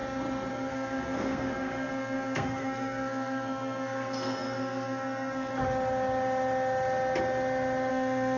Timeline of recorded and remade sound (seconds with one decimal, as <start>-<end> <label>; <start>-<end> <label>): 0.0-0.5 recorded; 0.5-5.5 remade; 5.5-7.9 recorded; 7.9-8.4 remade